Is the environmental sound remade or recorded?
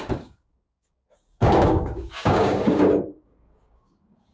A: remade